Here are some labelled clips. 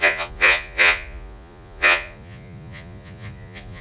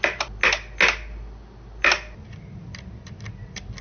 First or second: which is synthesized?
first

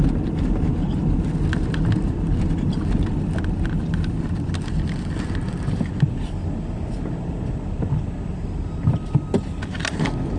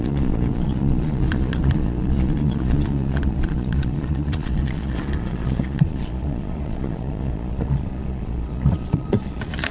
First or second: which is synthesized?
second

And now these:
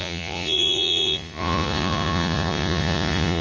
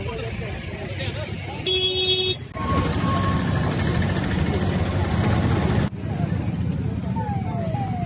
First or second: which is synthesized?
first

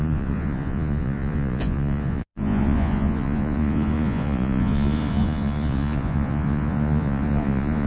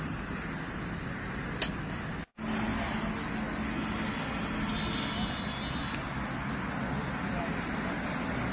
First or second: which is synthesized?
first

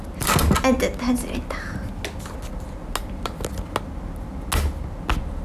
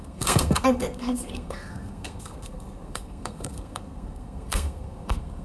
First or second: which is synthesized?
second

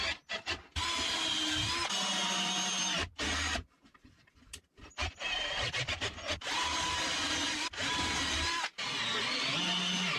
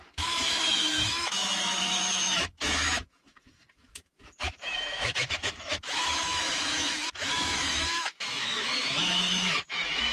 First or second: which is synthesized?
second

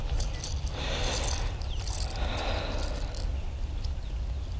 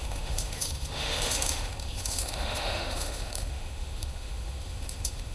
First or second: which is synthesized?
second